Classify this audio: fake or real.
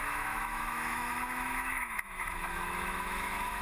fake